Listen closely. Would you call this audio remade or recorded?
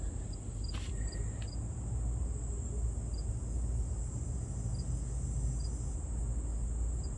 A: recorded